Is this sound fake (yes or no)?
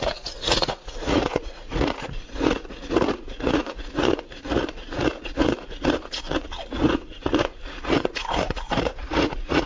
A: yes